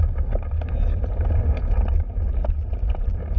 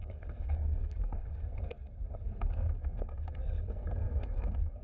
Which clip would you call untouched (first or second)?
first